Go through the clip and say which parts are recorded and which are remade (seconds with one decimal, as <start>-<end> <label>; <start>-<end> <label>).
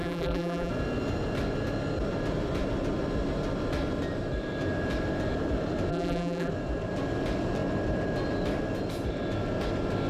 0.0-0.7 remade; 0.7-5.9 recorded; 5.9-6.5 remade; 6.5-10.1 recorded